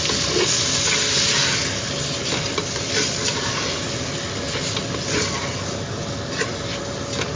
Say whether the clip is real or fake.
real